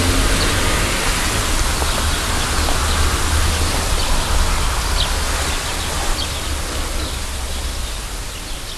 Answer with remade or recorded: recorded